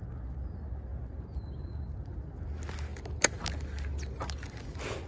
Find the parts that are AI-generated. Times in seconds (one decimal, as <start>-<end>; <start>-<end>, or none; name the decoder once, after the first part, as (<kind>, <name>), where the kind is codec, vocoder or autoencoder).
none